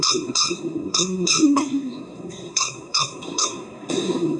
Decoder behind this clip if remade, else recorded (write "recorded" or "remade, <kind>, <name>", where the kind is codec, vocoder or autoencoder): remade, codec, SNAC